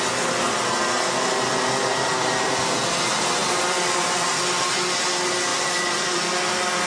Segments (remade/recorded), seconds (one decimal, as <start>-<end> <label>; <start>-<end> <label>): 0.0-3.4 recorded; 3.4-5.0 remade; 5.0-5.5 recorded; 5.5-6.3 remade; 6.3-6.9 recorded